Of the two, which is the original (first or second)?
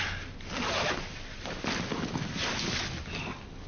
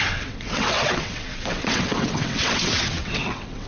first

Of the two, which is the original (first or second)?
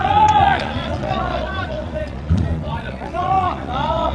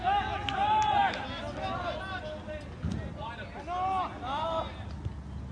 second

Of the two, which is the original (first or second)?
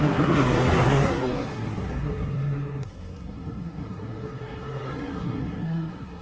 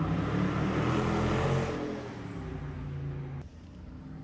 second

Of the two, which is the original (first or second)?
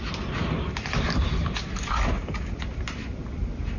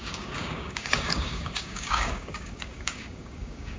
first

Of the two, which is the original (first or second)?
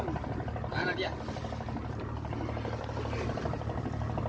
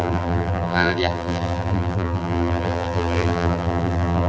first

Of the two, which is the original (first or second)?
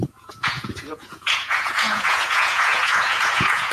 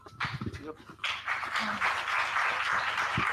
second